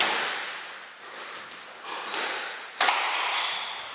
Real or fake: real